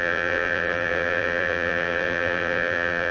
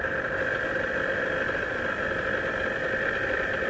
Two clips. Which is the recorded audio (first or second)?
second